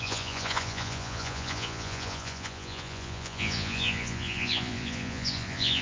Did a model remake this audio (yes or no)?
yes